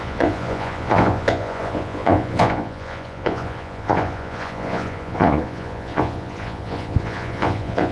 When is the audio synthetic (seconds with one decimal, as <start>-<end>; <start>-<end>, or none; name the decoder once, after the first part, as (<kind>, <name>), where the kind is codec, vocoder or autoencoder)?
0.0-7.9 (vocoder, Vocos)